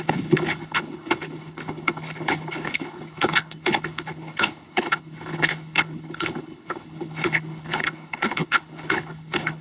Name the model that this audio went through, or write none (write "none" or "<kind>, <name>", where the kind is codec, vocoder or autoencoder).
codec, HILCodec